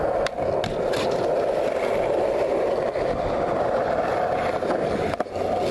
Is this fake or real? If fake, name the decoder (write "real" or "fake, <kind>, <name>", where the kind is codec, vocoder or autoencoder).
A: real